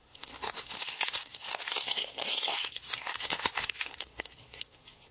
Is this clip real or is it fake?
fake